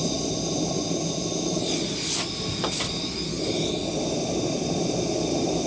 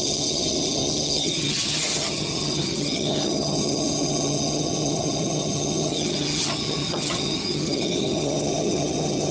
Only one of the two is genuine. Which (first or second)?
first